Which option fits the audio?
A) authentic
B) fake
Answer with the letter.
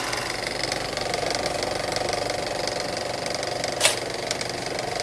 A